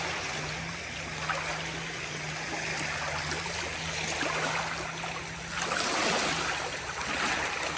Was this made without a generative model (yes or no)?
yes